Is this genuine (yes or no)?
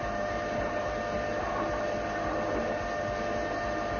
yes